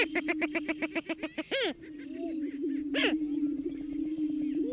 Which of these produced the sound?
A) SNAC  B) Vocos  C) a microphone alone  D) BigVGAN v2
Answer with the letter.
C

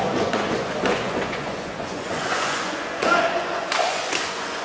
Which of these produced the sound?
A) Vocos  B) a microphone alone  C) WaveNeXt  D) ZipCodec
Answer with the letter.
A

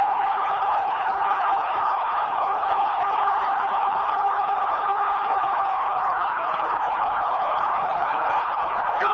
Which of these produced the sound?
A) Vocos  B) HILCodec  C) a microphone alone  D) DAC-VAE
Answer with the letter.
B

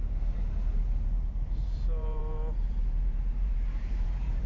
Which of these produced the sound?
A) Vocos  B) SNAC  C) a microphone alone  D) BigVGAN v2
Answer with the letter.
D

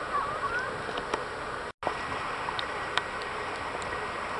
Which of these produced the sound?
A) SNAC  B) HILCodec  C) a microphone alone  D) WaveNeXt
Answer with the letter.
C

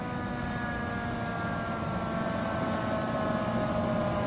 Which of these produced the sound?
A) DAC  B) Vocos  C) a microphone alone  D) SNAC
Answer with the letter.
C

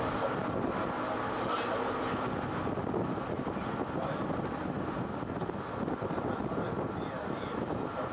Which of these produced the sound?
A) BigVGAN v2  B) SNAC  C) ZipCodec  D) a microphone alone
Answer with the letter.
D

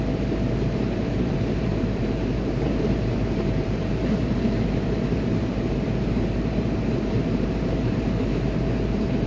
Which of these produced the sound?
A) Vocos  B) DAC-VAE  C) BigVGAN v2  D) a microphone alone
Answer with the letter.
C